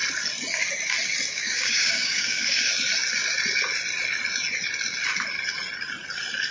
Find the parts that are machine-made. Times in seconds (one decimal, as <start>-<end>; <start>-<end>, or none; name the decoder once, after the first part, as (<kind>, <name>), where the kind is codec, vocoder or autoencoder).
1.3-2.7 (codec, DAC)